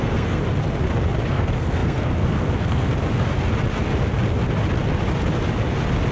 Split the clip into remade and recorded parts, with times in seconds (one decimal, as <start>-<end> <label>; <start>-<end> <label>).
0.0-0.4 remade; 0.4-1.3 recorded; 1.3-2.9 remade; 2.9-6.1 recorded